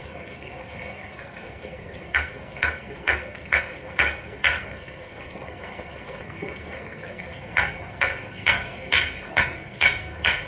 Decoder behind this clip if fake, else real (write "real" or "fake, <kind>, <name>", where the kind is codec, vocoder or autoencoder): fake, codec, SNAC